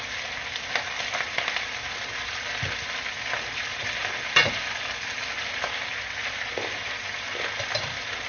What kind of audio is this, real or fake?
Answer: real